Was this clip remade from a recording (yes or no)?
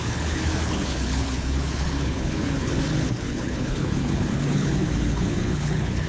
yes